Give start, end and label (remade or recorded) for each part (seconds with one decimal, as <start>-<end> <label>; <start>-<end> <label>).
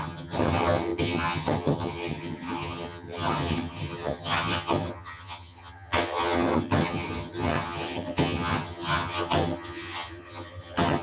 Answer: 0.0-11.0 remade